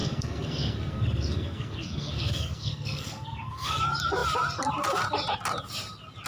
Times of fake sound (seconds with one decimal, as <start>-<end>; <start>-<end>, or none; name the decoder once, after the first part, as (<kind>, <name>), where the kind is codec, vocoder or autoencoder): 0.0-3.8 (codec, SNAC)